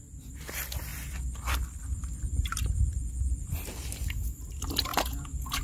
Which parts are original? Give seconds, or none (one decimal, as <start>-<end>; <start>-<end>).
0.0-4.9